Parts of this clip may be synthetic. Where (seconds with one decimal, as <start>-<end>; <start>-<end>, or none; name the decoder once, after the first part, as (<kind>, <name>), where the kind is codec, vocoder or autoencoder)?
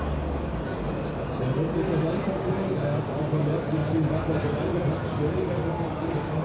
none